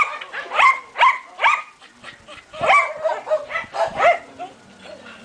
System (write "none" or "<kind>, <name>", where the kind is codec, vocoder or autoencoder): none